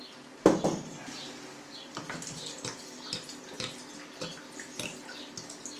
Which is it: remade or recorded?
recorded